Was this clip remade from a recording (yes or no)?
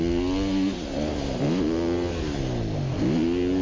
no